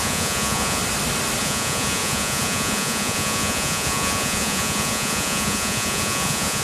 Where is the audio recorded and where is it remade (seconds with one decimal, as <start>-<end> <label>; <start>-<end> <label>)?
0.0-0.8 remade; 0.8-1.4 recorded; 1.4-6.6 remade